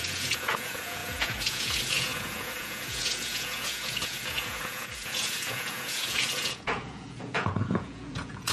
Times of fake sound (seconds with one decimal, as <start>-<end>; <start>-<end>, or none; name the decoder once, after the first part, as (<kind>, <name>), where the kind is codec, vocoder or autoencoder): 0.0-8.5 (vocoder, Vocos)